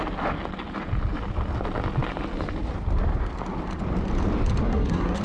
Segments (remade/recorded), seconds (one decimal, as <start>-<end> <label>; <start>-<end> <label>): 0.0-4.6 recorded; 4.6-5.2 remade